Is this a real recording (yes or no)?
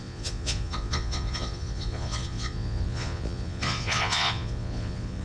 no